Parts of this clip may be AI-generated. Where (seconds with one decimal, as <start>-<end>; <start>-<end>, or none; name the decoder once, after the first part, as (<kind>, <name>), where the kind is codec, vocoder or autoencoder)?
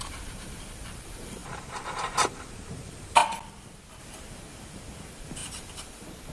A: 0.0-3.2 (vocoder, BigVGAN v2); 4.0-6.3